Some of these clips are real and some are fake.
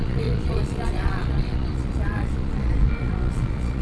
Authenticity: fake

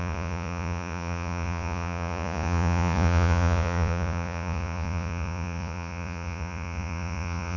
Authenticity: fake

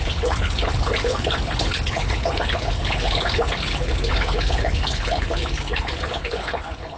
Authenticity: fake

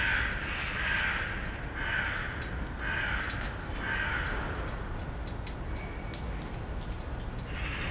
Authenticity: real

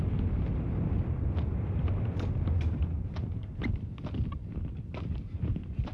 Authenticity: real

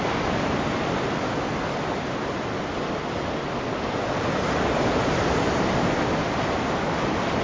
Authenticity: real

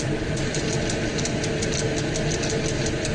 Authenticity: real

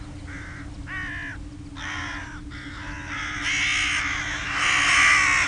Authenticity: real